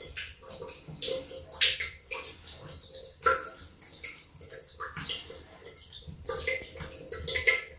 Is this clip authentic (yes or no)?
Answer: yes